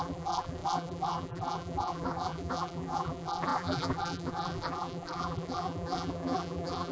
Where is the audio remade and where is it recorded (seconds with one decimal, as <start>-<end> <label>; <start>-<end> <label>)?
0.0-6.9 remade